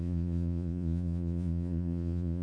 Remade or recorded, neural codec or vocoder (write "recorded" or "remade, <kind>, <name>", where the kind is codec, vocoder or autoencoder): remade, vocoder, Vocos